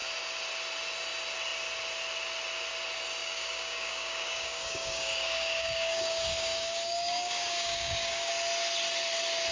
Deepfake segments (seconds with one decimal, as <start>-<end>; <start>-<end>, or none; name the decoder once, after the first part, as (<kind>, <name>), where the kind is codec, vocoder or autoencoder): 3.2-8.3 (codec, DAC)